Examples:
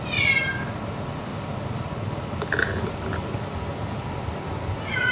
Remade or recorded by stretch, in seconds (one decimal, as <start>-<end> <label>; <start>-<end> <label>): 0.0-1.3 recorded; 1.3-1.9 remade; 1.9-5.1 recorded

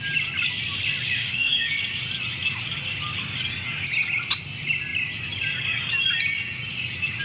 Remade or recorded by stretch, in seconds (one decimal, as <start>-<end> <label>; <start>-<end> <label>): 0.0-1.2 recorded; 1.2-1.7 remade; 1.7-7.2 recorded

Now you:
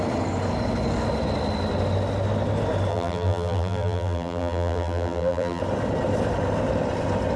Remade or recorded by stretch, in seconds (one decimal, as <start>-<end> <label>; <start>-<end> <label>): 0.0-2.9 recorded; 2.9-5.6 remade; 5.6-7.4 recorded

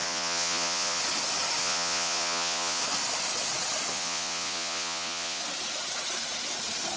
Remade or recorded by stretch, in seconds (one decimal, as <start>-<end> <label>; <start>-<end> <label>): 0.0-1.0 remade; 1.0-1.6 recorded; 1.6-2.8 remade; 2.8-3.9 recorded; 3.9-5.4 remade; 5.4-7.0 recorded

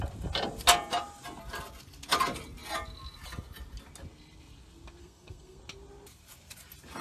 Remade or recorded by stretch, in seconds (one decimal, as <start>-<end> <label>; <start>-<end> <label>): 0.0-5.0 recorded; 5.0-5.6 remade; 5.6-7.0 recorded

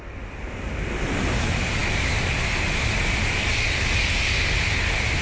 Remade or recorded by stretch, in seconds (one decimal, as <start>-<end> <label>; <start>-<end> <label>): 0.0-5.2 recorded

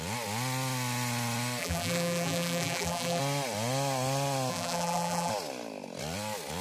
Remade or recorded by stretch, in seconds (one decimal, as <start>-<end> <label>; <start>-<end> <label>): 0.0-1.6 recorded; 1.6-3.2 remade; 3.2-4.5 recorded; 4.5-5.3 remade; 5.3-6.6 recorded

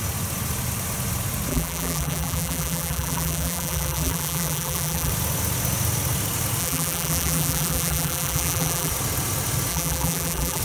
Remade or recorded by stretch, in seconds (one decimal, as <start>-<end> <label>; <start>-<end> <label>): 0.0-1.5 recorded; 1.5-5.1 remade; 5.1-6.6 recorded; 6.6-8.9 remade; 8.9-9.7 recorded; 9.7-10.6 remade